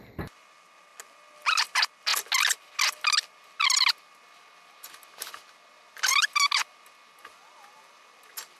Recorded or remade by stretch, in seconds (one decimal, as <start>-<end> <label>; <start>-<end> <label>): 0.0-8.6 recorded